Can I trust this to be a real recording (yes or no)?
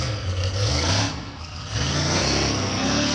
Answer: no